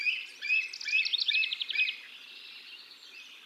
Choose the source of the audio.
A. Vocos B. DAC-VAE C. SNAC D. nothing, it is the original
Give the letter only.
D